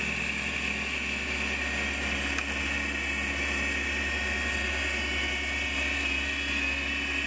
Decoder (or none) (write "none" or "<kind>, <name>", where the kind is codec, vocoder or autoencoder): none